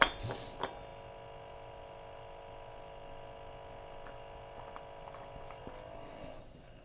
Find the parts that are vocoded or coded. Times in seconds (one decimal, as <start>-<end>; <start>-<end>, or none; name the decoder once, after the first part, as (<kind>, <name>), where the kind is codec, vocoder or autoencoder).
none